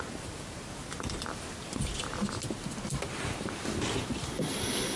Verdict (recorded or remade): recorded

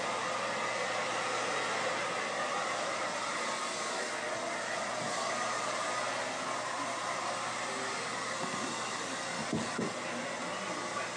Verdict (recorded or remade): recorded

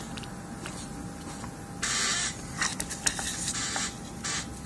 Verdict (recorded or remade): recorded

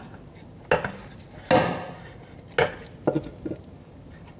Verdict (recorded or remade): recorded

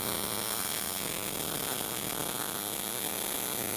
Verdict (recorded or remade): recorded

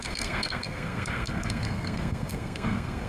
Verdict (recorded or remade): remade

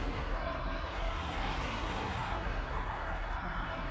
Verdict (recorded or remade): remade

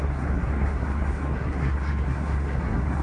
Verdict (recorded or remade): remade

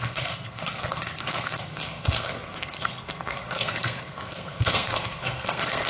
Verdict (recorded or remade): remade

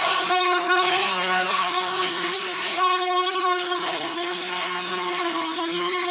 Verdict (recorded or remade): remade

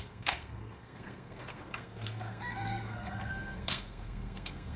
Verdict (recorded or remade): remade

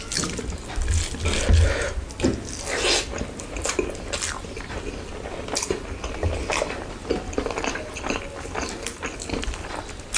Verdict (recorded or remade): recorded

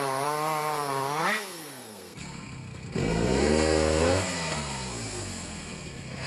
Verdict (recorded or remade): remade